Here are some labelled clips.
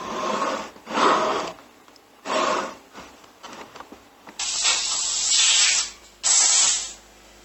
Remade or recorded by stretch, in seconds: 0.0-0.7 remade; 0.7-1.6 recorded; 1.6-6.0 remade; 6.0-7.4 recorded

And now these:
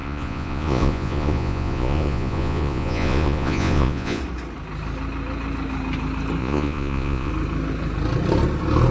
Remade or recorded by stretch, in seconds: 0.0-4.2 remade; 4.2-6.4 recorded; 6.4-7.3 remade; 7.3-8.9 recorded